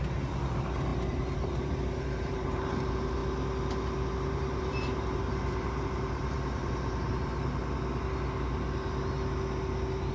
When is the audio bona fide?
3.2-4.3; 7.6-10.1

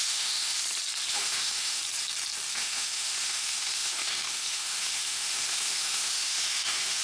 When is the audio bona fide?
0.6-1.1; 1.8-2.5

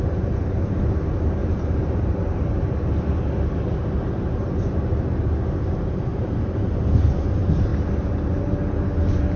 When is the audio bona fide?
0.0-1.4; 2.4-6.1; 6.7-9.4

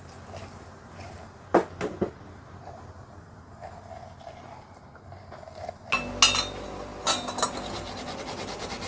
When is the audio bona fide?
0.0-8.9

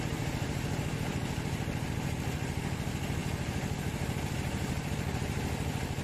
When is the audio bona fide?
0.0-6.0

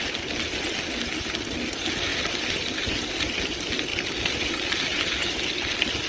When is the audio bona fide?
0.0-3.9; 4.5-6.1

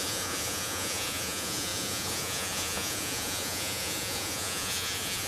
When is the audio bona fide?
none

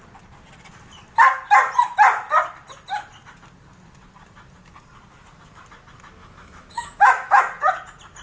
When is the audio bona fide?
0.0-6.2; 7.4-8.2